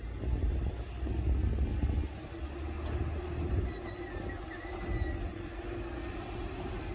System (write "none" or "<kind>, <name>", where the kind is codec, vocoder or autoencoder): none